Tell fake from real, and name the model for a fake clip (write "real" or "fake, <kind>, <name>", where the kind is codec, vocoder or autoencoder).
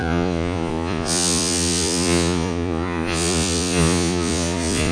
fake, vocoder, Vocos